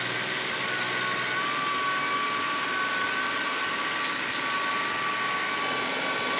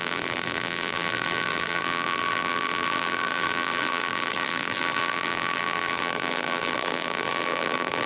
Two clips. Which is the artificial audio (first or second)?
second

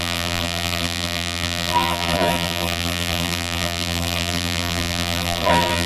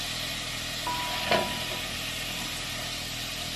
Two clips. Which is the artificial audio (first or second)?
first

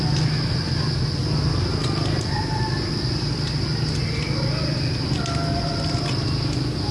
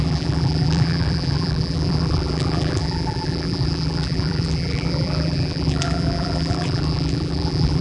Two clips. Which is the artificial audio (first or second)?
second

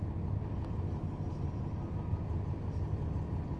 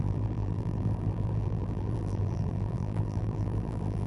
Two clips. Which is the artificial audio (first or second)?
second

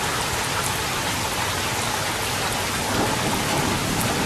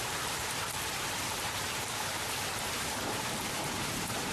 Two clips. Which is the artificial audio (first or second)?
second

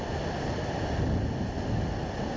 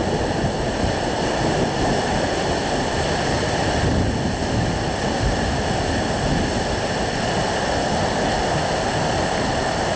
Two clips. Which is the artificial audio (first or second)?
second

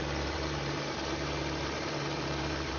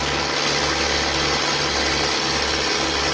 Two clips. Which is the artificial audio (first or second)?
first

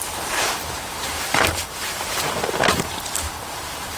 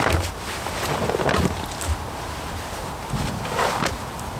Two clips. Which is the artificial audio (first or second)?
first